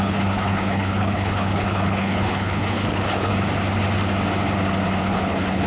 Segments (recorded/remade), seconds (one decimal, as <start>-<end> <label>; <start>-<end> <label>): 0.0-3.3 remade; 3.3-5.0 recorded; 5.0-5.7 remade